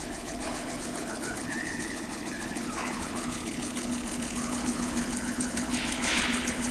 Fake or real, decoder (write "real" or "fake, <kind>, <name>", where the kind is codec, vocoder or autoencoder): fake, codec, HILCodec